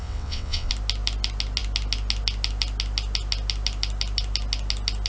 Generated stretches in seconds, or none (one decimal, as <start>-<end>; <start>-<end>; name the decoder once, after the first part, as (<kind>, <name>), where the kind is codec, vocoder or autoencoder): 0.0-0.7 (vocoder, WaveNeXt)